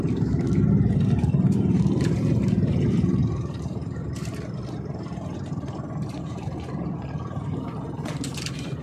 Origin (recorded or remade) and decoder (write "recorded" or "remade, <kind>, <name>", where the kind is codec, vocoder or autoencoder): remade, vocoder, BigVGAN v2